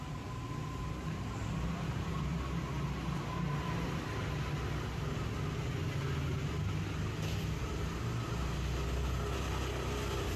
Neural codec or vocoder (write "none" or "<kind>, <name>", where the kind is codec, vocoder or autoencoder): none